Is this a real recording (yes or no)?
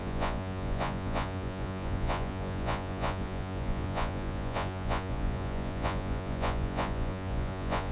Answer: no